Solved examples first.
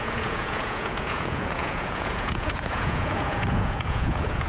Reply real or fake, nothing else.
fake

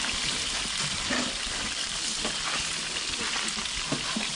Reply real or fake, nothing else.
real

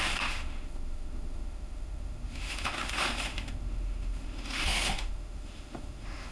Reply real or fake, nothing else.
fake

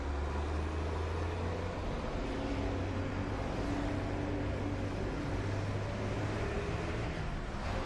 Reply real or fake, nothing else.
real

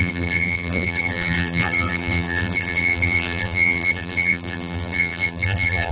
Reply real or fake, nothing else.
fake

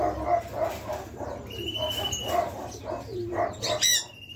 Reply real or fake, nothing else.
real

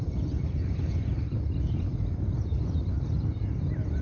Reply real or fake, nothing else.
fake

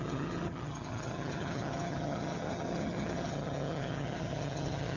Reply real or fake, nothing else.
fake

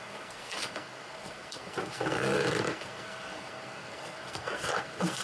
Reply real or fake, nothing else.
fake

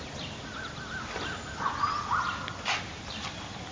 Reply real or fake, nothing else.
real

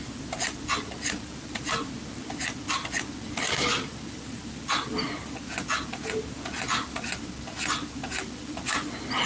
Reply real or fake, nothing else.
real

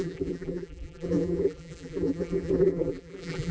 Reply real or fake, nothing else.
fake